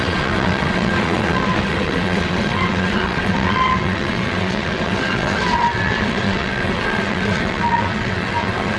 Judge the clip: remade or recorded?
remade